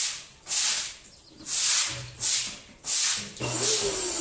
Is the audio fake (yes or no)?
no